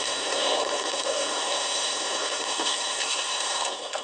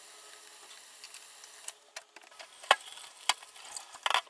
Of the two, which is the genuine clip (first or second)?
second